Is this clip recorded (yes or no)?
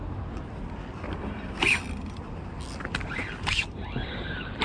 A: yes